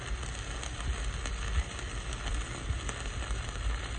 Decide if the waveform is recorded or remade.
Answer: recorded